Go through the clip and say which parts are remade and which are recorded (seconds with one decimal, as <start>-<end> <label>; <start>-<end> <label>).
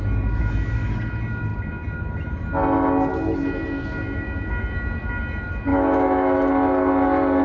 0.0-5.7 recorded; 5.7-6.5 remade; 6.5-7.4 recorded